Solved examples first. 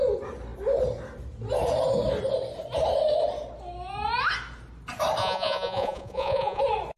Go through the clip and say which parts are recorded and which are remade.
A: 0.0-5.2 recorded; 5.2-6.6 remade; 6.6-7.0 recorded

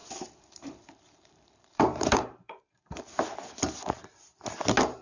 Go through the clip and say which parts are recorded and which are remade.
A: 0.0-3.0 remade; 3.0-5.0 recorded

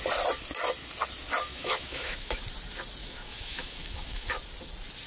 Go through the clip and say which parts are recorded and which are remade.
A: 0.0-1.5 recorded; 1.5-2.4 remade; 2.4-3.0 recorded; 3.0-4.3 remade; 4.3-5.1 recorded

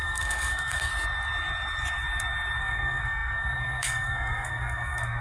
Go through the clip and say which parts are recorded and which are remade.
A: 0.0-0.9 remade; 0.9-2.6 recorded; 2.6-5.2 remade

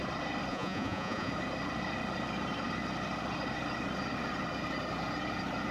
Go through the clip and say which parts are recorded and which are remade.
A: 0.0-0.5 recorded; 0.5-1.3 remade; 1.3-5.7 recorded

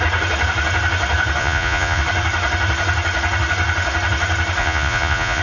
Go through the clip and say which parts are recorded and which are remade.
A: 0.0-1.4 recorded; 1.4-2.0 remade; 2.0-4.6 recorded; 4.6-5.4 remade

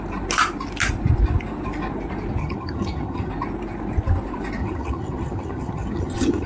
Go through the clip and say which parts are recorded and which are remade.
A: 0.0-2.4 recorded; 2.4-3.3 remade; 3.3-4.6 recorded; 4.6-6.5 remade